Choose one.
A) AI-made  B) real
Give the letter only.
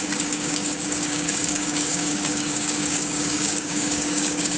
A